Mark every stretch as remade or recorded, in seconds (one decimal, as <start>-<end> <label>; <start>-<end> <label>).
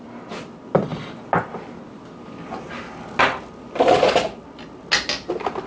0.0-5.7 recorded